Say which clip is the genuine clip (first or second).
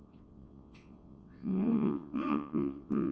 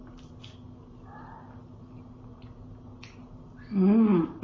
second